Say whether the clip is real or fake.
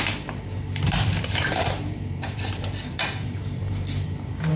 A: fake